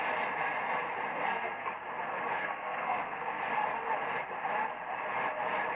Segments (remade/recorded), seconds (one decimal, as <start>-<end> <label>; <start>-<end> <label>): 0.0-1.1 recorded; 1.1-1.7 remade; 1.7-2.4 recorded; 2.4-3.4 remade; 3.4-5.7 recorded